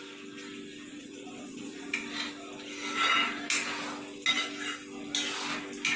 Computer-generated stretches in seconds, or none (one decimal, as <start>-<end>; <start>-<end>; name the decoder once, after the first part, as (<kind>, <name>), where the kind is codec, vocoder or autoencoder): 0.9-1.9 (vocoder, Vocos)